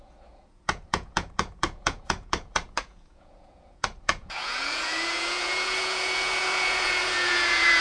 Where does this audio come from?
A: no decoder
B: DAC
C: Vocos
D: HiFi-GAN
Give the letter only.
C